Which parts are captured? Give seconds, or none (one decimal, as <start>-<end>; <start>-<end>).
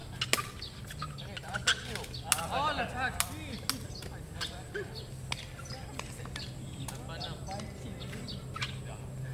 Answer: 0.0-9.3